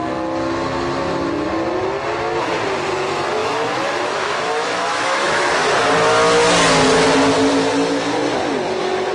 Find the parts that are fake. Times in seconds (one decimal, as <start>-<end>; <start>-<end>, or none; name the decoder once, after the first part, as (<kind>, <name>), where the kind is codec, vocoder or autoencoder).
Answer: 3.4-5.5 (autoencoder, DAC-VAE)